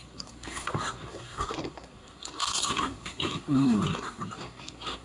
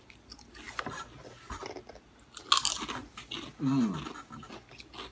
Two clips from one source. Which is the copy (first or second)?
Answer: first